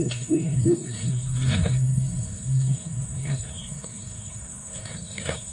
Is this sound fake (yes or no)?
yes